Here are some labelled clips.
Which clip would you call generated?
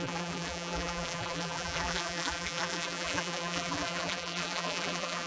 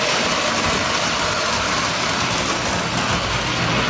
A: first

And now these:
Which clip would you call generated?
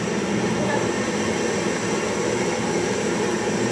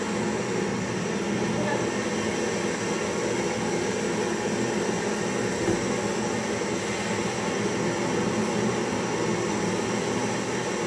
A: first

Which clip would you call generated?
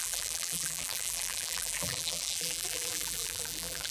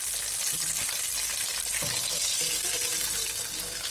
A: first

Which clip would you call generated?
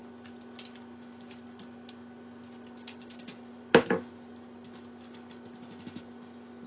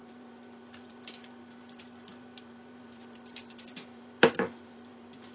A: second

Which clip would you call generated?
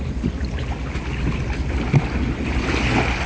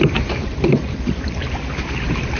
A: second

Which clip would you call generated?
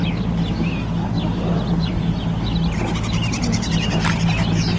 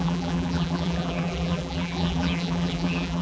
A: second